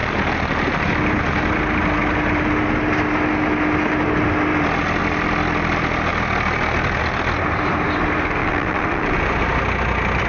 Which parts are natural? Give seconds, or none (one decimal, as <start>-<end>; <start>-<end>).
0.0-8.4; 9.2-10.3